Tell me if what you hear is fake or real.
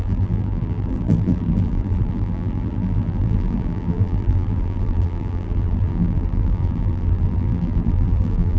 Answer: fake